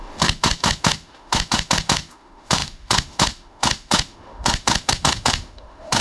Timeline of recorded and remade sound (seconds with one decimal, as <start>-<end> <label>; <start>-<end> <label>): 0.0-6.0 remade